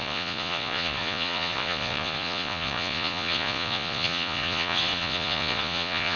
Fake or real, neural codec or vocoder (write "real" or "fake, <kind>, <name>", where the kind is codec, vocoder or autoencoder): fake, vocoder, Vocos